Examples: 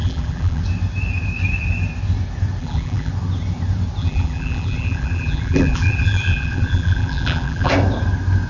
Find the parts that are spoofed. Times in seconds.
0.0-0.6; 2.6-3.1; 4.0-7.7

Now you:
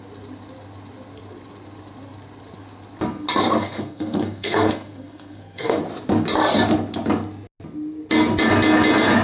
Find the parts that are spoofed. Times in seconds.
3.6-5.8

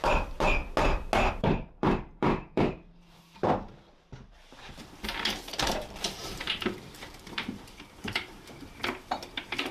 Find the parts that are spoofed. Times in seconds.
0.0-0.6; 1.3-9.7